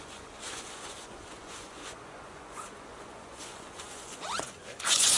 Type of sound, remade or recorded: remade